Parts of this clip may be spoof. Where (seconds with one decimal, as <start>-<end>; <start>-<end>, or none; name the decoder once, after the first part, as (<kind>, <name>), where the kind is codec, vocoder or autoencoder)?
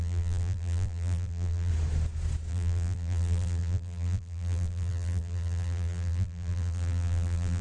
0.0-1.7 (vocoder, BigVGAN v2); 2.5-7.6